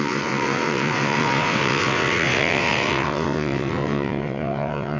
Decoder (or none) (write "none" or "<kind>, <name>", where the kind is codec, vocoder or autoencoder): vocoder, WaveNeXt